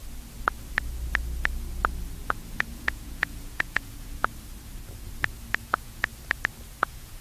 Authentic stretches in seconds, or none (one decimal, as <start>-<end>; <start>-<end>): 0.0-2.3; 4.2-5.6; 6.1-6.8